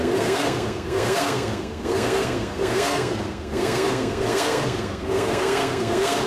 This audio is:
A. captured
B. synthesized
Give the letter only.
B